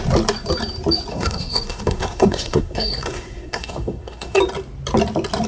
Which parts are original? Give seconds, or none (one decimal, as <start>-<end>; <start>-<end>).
0.0-1.1; 4.4-5.5